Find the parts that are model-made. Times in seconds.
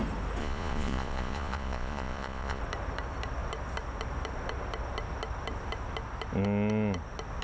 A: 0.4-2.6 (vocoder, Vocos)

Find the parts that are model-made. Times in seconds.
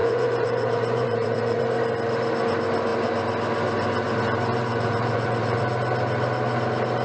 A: 0.0-1.6 (vocoder, Vocos); 4.7-5.6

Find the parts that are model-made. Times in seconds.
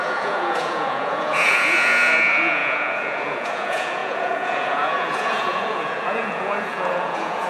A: 0.0-7.5 (vocoder, Vocos)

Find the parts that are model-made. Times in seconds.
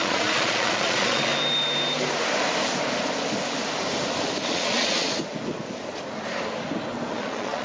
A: 0.0-1.3 (vocoder, Vocos); 4.4-5.1; 7.1-7.6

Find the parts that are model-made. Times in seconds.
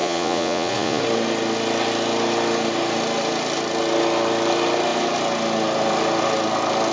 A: 0.0-1.0 (vocoder, Vocos)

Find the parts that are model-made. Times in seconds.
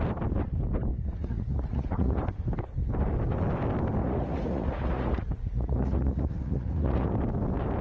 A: 0.9-2.2 (vocoder, Vocos); 4.0-7.1